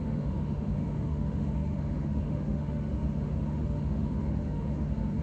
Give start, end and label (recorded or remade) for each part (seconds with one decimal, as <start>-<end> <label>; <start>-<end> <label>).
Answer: 0.0-5.2 remade